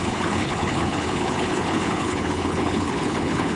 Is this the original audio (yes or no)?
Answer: no